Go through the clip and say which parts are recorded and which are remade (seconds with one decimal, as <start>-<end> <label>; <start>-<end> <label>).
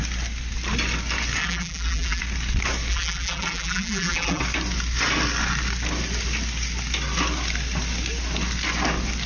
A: 0.0-1.4 recorded; 1.4-2.2 remade; 2.2-2.9 recorded; 2.9-4.4 remade; 4.4-9.3 recorded